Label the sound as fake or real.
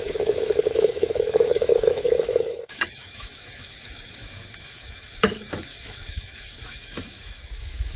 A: fake